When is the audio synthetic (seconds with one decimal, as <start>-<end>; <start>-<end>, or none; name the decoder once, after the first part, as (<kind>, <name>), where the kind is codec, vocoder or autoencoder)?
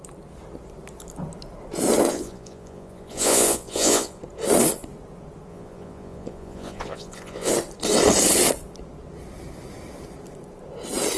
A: 2.1-4.2 (vocoder, Vocos); 5.5-7.5